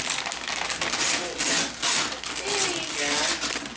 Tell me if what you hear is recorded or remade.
recorded